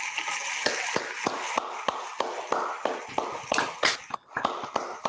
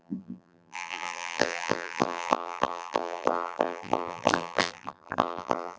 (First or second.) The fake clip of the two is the second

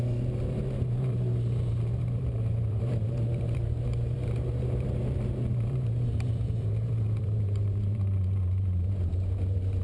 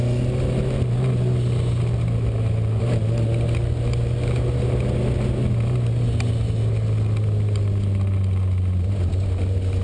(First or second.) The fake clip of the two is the first